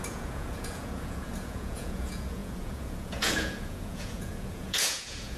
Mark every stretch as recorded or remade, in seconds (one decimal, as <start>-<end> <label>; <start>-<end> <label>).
0.0-5.4 remade